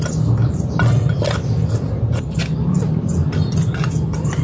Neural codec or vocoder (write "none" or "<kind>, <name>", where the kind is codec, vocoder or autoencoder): none